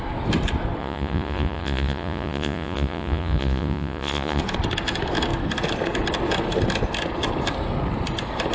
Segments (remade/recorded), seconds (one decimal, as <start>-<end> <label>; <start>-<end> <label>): 0.0-0.8 recorded; 0.8-4.4 remade; 4.4-8.5 recorded